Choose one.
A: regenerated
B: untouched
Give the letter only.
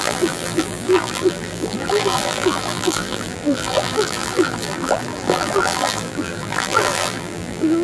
A